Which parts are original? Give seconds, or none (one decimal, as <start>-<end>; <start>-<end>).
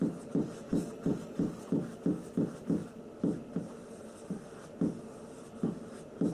0.0-6.3